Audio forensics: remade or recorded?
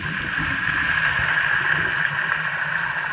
recorded